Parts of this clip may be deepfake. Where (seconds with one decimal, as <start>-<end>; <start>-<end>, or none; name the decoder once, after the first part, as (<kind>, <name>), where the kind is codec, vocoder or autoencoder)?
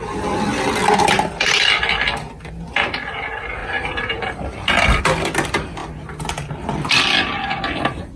3.6-5.0 (vocoder, BigVGAN v2)